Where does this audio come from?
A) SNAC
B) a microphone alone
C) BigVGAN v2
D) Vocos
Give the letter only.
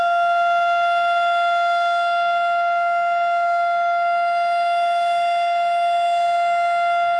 B